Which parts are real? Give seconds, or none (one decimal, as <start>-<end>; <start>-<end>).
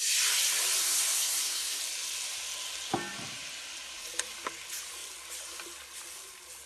0.0-0.8; 1.8-6.7